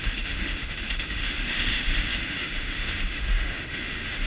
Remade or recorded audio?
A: remade